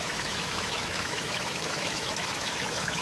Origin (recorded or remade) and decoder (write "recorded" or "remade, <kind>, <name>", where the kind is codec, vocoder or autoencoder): remade, autoencoder, DAC-VAE